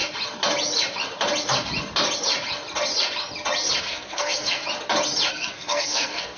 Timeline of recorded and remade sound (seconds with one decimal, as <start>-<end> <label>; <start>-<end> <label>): 0.0-3.8 recorded; 3.8-4.6 remade; 4.6-5.3 recorded; 5.3-6.4 remade